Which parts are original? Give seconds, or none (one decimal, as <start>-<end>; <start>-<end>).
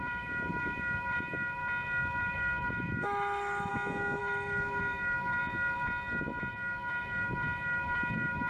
1.6-2.2; 3.7-4.2; 5.4-6.5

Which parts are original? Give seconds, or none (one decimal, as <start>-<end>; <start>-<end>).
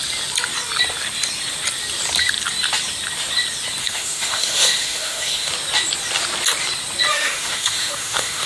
0.0-3.8; 5.5-7.1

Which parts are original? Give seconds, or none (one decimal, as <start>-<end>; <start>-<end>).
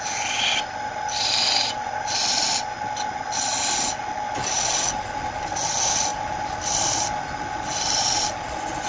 0.0-8.9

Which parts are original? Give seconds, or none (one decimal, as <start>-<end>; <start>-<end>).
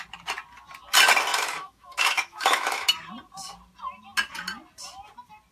0.0-1.3; 2.9-5.5